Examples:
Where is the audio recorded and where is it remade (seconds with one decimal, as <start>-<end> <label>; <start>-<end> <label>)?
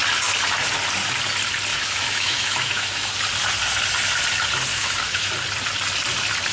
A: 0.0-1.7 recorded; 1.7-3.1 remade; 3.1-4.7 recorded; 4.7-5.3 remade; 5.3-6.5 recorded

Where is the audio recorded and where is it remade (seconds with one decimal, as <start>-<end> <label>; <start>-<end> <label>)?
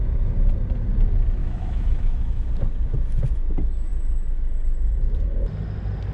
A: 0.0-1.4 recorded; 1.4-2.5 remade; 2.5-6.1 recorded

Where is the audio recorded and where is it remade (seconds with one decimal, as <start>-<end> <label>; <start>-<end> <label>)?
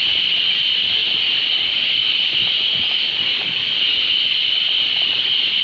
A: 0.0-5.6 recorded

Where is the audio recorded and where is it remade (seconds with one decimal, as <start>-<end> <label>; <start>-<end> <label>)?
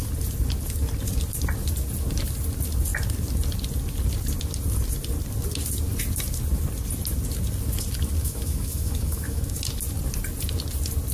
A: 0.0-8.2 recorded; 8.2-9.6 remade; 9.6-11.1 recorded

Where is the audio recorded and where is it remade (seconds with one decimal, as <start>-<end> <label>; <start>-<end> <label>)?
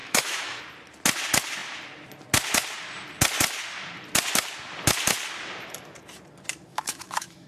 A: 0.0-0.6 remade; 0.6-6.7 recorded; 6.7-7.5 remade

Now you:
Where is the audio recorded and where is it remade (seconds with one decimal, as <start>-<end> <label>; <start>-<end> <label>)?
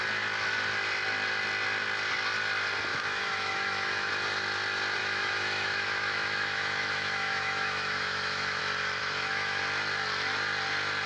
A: 0.0-2.9 recorded; 2.9-4.1 remade; 4.1-5.0 recorded; 5.0-8.6 remade; 8.6-9.0 recorded; 9.0-9.6 remade; 9.6-11.1 recorded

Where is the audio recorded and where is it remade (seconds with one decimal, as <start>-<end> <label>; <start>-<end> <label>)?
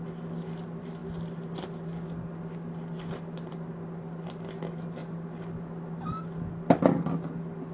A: 0.0-7.7 recorded